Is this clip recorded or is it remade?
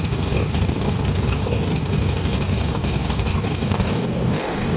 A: remade